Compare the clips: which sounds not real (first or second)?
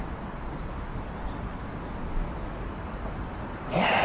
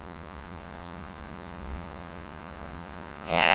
second